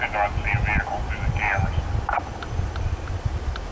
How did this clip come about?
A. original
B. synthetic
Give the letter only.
A